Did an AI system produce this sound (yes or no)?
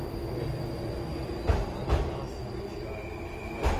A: no